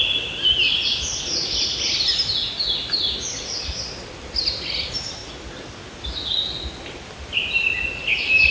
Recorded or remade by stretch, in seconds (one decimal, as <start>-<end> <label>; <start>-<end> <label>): 0.0-8.5 recorded